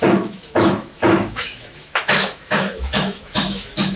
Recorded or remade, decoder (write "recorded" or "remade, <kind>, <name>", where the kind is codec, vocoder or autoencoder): remade, autoencoder, DAC-VAE